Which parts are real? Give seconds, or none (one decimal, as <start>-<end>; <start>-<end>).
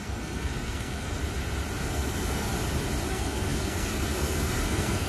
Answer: 1.2-1.8; 2.5-3.1